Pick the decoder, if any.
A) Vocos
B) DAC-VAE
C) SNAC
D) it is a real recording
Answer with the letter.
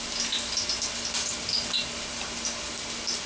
D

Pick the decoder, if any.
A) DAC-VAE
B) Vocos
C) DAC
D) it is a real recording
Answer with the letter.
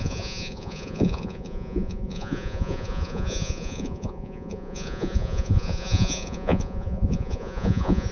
B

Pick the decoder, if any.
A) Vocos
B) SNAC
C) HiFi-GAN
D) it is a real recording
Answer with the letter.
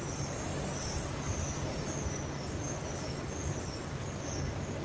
D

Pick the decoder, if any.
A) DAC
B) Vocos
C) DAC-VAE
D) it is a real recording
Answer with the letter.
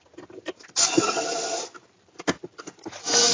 D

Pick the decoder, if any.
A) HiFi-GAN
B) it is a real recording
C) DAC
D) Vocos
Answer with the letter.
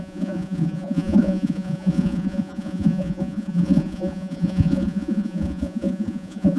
D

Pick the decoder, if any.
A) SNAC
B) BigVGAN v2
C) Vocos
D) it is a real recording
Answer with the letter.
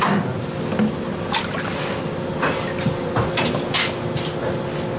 D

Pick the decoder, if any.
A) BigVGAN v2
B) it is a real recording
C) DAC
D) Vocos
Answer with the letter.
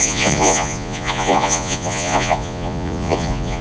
D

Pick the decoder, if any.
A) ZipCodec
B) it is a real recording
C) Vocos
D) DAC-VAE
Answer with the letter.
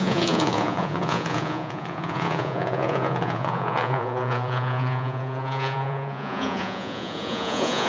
C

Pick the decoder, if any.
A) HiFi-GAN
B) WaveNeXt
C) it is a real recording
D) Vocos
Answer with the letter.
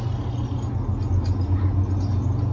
C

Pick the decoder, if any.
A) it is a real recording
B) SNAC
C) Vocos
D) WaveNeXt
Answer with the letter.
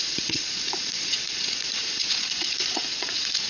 C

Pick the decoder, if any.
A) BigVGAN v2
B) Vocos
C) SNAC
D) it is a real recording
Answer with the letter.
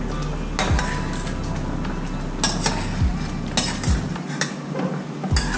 D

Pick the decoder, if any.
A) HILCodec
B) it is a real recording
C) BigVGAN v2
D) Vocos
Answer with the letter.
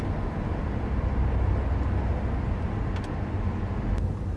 B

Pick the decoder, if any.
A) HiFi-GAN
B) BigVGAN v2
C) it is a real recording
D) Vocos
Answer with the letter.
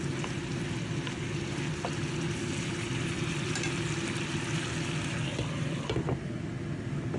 C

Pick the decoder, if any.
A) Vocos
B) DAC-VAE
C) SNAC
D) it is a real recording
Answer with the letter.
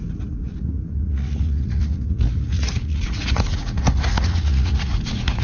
A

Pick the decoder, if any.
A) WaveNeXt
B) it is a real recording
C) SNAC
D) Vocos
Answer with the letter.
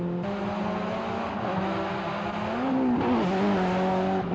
B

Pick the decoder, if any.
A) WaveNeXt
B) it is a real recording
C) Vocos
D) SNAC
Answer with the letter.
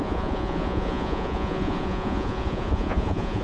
C